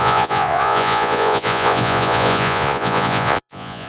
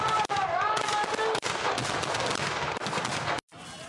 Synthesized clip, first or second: first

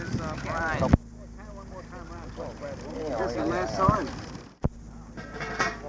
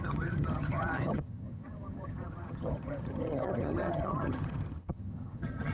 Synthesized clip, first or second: second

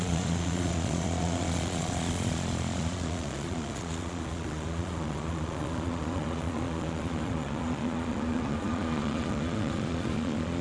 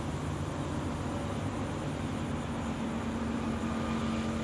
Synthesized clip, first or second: first